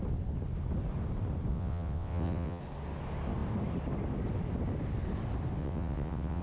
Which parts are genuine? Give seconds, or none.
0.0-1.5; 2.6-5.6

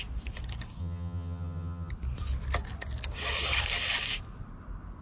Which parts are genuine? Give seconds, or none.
0.0-0.8; 1.9-5.0

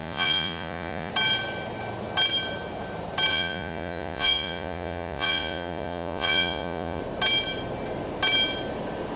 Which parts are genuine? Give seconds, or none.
1.1-3.3; 7.0-9.2

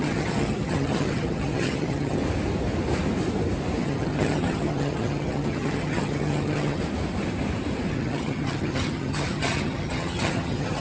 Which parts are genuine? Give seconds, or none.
2.2-3.8; 6.8-7.9

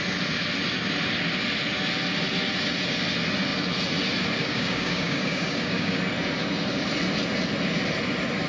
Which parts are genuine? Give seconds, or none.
0.0-4.4; 6.0-8.5